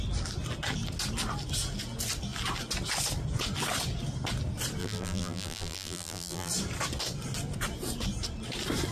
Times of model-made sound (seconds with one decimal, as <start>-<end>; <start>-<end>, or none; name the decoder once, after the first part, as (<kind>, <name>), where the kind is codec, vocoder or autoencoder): 4.8-6.5 (vocoder, BigVGAN v2)